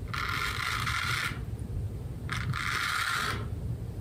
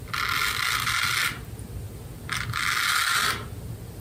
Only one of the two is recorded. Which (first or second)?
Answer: second